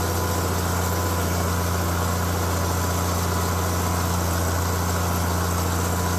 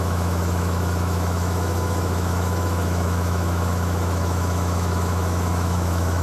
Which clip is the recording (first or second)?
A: first